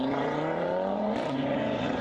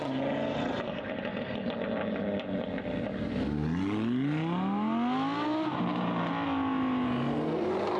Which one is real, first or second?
second